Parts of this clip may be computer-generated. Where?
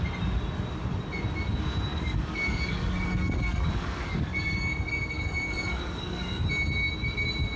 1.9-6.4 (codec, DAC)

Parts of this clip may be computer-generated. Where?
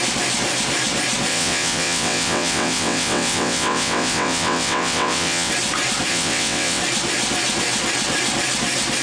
1.3-5.5 (vocoder, WaveNeXt); 6.1-6.8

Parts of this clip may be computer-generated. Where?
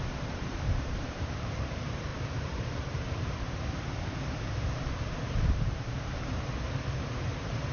0.0-7.7 (vocoder, BigVGAN v2)